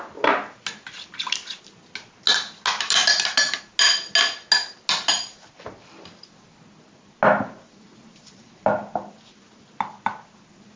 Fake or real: real